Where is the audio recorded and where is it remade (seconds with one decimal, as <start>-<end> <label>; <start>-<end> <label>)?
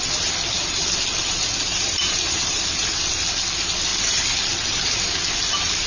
0.0-1.7 recorded; 1.7-3.0 remade; 3.0-5.9 recorded